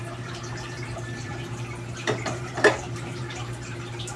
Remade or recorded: remade